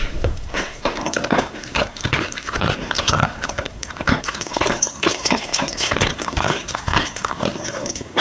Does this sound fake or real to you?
fake